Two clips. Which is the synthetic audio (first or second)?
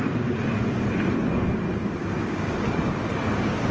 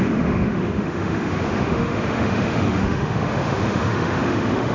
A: second